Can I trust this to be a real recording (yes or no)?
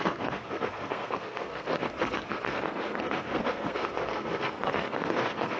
no